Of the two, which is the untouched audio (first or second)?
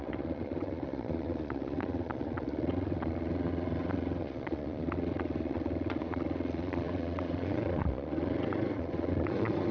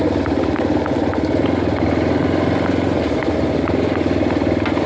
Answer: second